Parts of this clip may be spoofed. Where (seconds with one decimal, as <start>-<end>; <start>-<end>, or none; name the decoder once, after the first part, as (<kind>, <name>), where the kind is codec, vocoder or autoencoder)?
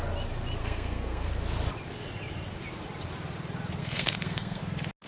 0.6-1.3 (codec, SNAC); 3.8-4.6